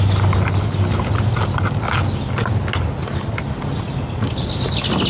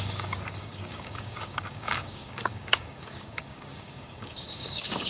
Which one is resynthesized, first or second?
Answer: second